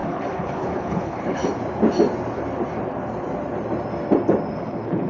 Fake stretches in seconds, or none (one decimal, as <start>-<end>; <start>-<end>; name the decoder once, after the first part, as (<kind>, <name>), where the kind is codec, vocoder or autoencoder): 0.0-1.4 (codec, HILCodec); 4.5-5.1